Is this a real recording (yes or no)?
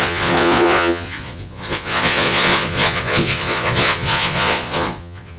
no